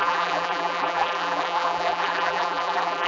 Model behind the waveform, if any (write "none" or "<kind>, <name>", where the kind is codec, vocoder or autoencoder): vocoder, BigVGAN v2